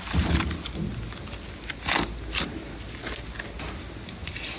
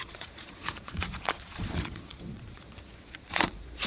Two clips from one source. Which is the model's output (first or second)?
second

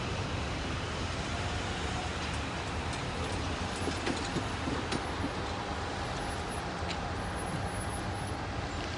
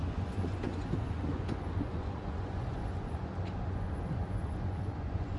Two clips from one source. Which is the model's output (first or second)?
second